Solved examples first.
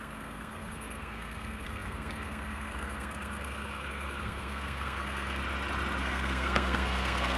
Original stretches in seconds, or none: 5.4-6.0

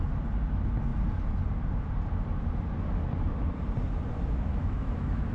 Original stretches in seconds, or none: 0.0-4.5

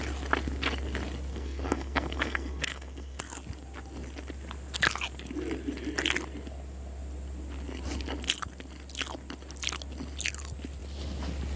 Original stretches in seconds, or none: 0.0-1.3; 3.2-11.6